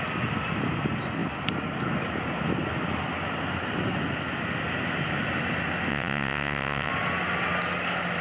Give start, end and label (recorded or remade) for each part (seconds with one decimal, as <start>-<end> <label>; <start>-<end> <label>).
0.0-5.9 recorded; 5.9-6.9 remade; 6.9-8.2 recorded